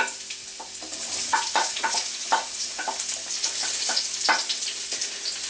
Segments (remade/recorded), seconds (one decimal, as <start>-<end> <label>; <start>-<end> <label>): 0.0-1.3 recorded; 1.3-2.9 remade; 2.9-5.5 recorded